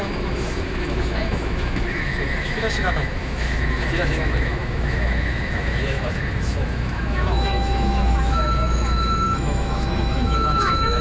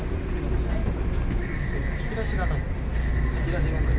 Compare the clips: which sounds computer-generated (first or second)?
first